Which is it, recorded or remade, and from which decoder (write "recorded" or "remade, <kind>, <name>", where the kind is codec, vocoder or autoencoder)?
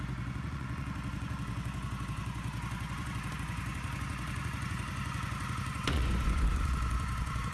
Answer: remade, vocoder, Vocos